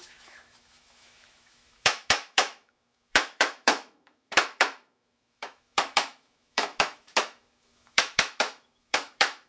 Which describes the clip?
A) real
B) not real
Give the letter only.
B